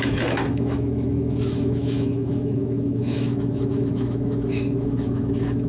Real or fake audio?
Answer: fake